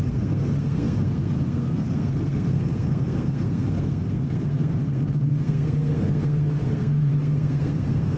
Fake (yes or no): yes